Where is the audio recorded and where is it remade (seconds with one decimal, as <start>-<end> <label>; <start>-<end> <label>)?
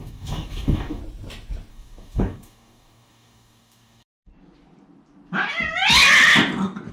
0.0-1.0 remade; 1.0-1.7 recorded; 1.7-4.3 remade; 4.3-6.9 recorded